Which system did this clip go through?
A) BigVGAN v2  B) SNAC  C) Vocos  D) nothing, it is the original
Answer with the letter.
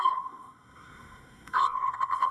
B